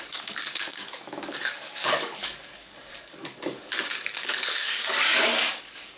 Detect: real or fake fake